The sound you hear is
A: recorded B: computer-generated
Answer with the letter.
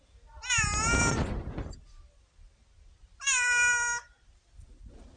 A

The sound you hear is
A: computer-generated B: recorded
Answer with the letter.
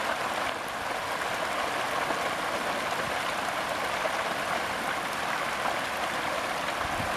B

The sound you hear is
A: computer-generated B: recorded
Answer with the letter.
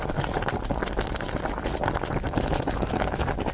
B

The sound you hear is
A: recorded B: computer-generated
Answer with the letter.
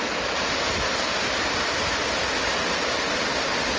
A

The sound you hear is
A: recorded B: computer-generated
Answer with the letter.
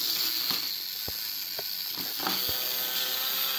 A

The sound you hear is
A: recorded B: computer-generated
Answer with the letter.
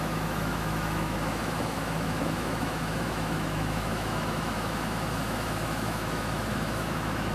B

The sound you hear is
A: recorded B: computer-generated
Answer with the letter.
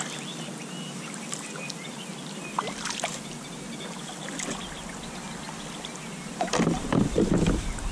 A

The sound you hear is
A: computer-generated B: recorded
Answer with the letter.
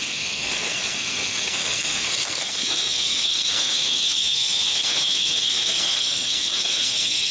A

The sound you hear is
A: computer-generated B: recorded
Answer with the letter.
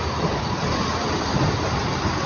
B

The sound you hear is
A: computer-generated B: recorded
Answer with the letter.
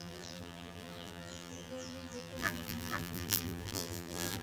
A